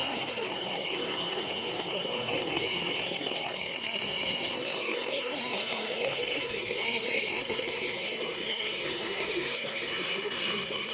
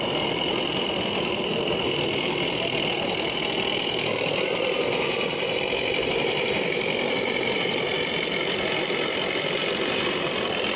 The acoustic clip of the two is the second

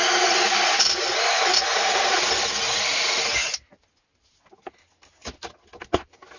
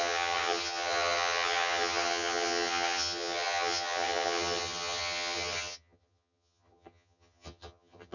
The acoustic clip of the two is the first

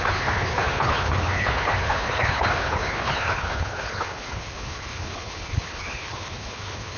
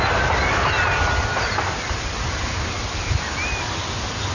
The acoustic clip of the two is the second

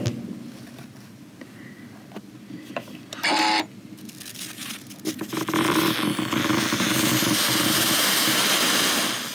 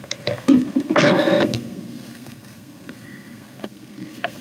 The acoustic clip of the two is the first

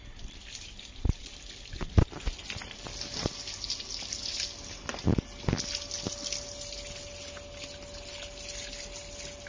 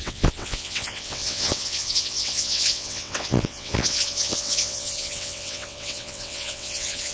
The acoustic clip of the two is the first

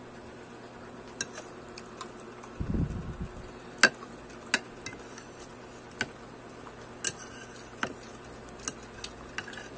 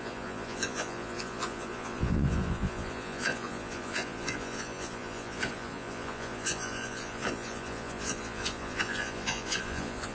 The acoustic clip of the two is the first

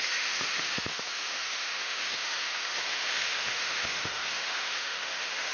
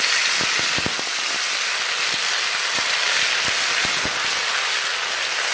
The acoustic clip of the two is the second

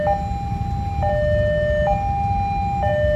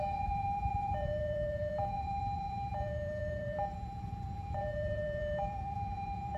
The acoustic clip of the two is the first